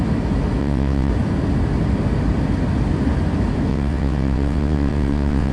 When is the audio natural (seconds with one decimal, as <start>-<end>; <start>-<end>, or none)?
0.0-0.6; 1.1-3.7